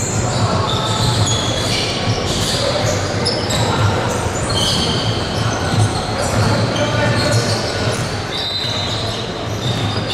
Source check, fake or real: fake